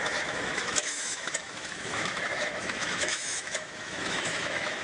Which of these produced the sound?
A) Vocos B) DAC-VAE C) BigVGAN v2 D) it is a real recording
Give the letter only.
B